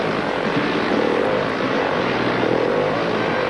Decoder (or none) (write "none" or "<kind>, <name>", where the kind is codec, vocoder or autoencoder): none